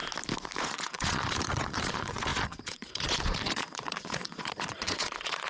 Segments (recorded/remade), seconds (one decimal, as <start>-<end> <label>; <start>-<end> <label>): 0.0-0.6 recorded; 0.6-5.5 remade